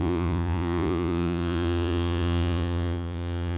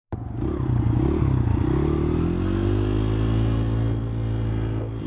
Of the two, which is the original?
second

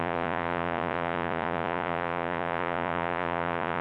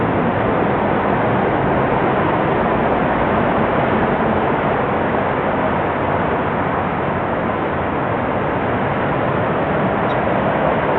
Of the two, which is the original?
second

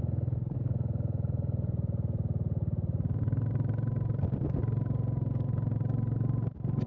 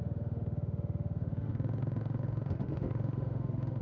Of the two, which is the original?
first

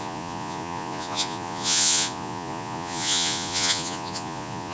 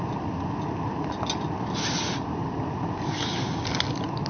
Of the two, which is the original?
second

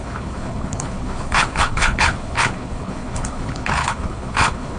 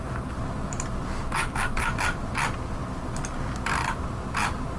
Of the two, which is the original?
second